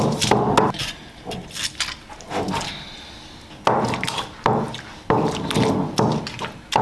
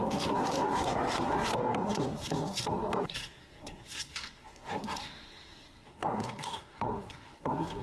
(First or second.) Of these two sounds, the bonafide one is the first